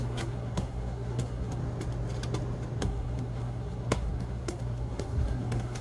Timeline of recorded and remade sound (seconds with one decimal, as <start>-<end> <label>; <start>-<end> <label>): 0.0-1.6 remade; 1.6-2.8 recorded; 2.8-5.8 remade